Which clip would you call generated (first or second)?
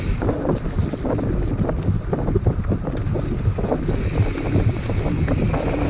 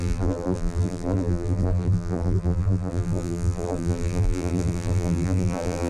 second